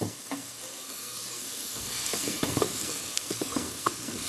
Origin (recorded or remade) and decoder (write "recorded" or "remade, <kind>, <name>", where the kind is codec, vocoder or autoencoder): remade, codec, SNAC